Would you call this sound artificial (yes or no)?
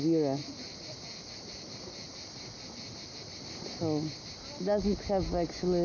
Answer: no